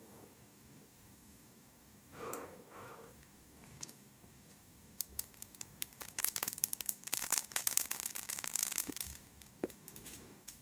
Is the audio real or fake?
fake